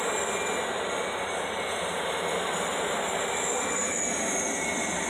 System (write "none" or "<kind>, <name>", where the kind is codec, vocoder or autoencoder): none